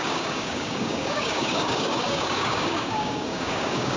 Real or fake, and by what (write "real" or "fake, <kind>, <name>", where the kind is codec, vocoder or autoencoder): fake, codec, DAC